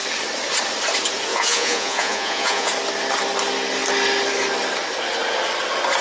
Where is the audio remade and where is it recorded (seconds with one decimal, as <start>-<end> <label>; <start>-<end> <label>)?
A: 0.0-1.3 recorded; 1.3-2.7 remade; 2.7-6.0 recorded